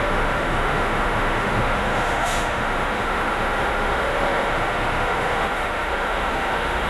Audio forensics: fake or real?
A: fake